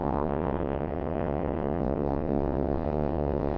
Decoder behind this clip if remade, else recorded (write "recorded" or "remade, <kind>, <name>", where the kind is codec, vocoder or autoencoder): remade, vocoder, WaveNeXt